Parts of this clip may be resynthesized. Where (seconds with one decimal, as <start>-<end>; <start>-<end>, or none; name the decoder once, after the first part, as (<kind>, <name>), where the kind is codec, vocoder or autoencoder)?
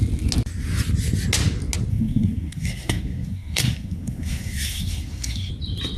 1.9-5.5 (codec, SNAC)